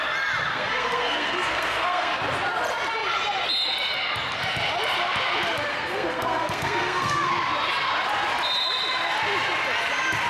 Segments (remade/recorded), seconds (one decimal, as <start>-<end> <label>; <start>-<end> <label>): 0.0-0.5 recorded; 0.5-2.1 remade; 2.1-5.7 recorded; 5.7-7.3 remade; 7.3-10.3 recorded